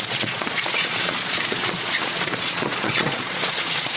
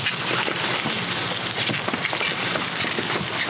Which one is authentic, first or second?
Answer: second